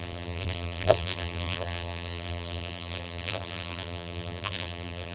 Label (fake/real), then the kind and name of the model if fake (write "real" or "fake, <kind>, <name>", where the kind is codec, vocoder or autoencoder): fake, vocoder, BigVGAN v2